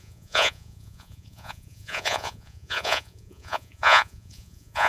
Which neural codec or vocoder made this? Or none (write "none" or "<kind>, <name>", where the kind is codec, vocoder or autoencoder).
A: vocoder, Vocos